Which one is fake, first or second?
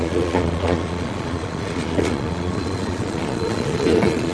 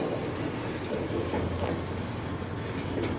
first